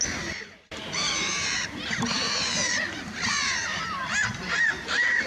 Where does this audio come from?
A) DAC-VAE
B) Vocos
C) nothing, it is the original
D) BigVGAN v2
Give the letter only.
D